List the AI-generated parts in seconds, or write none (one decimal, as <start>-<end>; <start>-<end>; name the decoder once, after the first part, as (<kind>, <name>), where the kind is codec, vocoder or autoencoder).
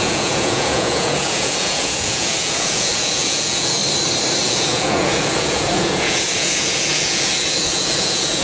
0.0-3.8 (vocoder, Vocos); 4.4-8.4